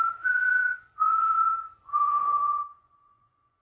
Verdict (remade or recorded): remade